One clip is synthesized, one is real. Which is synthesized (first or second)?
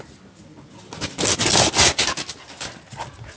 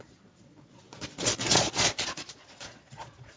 second